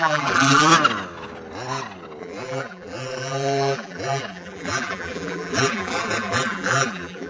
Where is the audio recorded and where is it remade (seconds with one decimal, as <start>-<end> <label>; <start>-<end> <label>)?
0.0-0.7 remade; 0.7-2.2 recorded; 2.2-7.3 remade